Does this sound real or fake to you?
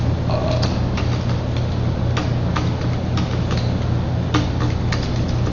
real